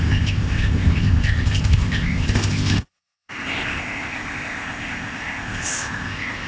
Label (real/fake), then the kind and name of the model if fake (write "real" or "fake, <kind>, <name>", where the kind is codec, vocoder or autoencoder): fake, codec, ZipCodec